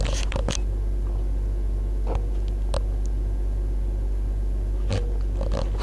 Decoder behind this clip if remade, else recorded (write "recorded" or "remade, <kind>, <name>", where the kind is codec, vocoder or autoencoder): recorded